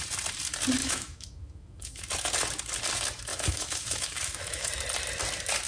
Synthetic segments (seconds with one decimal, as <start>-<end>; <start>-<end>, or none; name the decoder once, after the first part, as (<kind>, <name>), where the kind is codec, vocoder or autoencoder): 0.8-2.1 (autoencoder, DAC-VAE); 3.3-4.7